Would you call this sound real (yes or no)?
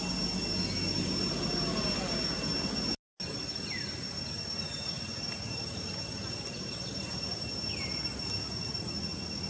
yes